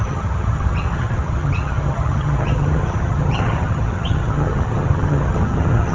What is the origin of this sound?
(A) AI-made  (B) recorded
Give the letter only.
A